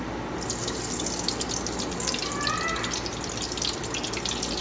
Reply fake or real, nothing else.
real